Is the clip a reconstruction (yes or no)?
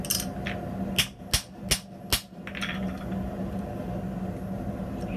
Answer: no